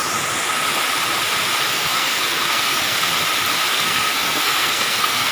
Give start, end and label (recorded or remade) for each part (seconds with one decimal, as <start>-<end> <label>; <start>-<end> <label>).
0.0-1.7 recorded; 1.7-3.1 remade; 3.1-3.7 recorded; 3.7-5.3 remade